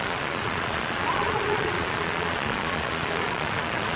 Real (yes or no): no